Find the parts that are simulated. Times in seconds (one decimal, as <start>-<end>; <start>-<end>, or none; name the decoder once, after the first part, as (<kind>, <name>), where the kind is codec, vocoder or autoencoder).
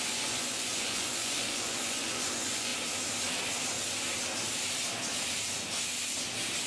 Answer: 0.0-2.7 (vocoder, Vocos)